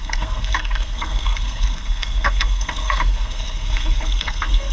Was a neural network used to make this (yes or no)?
yes